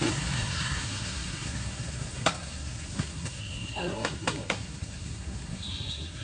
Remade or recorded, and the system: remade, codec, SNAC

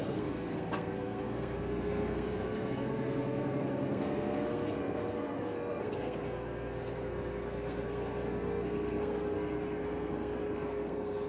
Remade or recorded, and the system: remade, codec, SNAC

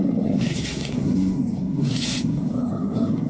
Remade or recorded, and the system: remade, codec, SNAC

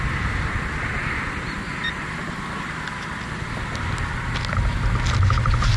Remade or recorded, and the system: recorded